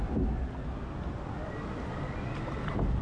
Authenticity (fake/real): real